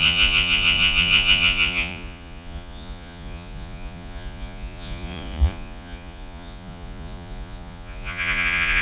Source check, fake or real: fake